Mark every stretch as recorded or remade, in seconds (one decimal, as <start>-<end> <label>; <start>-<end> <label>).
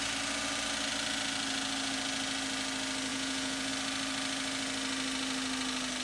0.0-3.1 recorded; 3.1-3.7 remade; 3.7-6.0 recorded